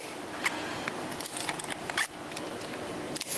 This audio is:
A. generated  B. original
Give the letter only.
B